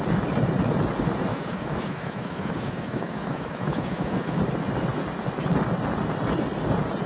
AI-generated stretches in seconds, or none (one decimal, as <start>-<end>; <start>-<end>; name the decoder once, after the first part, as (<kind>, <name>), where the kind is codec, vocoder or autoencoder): 1.3-4.4 (autoencoder, DAC-VAE)